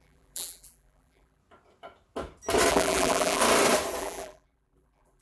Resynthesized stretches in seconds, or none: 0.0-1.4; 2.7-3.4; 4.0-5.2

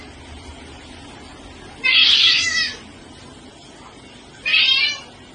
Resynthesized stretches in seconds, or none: 2.0-2.7